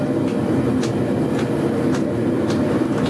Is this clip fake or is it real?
real